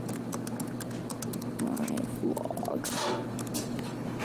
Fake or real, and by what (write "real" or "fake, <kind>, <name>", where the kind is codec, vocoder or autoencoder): real